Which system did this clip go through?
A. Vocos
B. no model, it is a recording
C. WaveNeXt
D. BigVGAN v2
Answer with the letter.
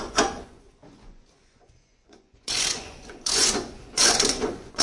A